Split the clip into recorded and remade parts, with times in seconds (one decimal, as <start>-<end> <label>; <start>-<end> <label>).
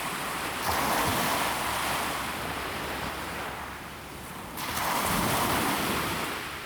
0.0-6.7 remade